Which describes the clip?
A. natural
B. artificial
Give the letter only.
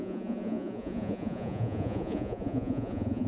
B